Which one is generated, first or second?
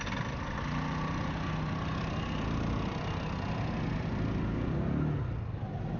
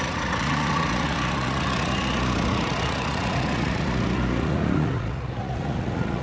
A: second